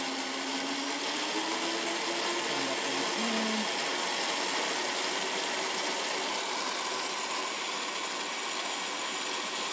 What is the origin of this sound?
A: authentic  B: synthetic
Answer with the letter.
A